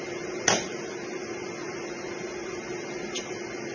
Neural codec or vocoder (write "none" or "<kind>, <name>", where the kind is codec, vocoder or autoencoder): none